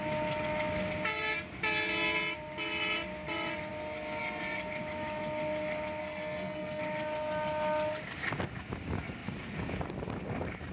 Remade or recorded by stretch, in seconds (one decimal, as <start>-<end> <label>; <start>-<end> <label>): 0.0-6.0 recorded; 6.0-6.8 remade; 6.8-10.7 recorded